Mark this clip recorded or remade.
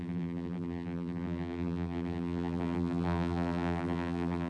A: remade